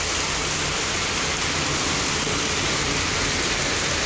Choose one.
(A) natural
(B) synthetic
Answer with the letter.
B